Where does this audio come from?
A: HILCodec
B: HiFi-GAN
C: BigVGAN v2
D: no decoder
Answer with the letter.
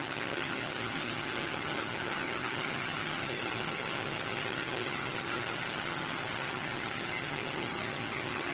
B